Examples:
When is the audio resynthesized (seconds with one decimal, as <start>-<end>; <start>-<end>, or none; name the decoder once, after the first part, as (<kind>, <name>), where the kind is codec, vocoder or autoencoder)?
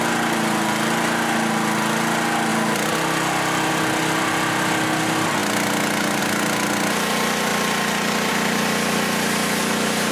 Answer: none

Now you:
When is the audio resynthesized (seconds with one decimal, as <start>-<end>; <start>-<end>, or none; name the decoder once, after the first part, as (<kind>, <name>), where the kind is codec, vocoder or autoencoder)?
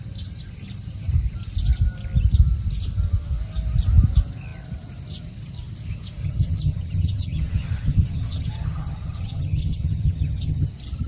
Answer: 6.2-10.7 (vocoder, HiFi-GAN)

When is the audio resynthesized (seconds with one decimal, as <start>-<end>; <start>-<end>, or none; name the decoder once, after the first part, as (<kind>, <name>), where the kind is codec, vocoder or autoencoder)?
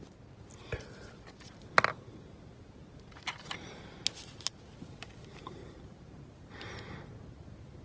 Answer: 5.6-7.1 (vocoder, BigVGAN v2)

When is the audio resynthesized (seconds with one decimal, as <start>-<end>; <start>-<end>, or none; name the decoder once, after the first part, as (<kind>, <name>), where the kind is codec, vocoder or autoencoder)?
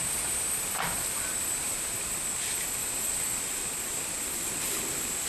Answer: 0.0-5.3 (vocoder, BigVGAN v2)